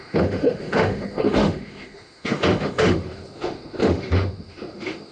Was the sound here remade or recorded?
remade